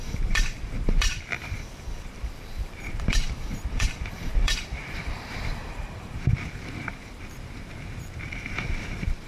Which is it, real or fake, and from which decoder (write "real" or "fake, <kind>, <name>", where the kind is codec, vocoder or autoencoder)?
fake, vocoder, BigVGAN v2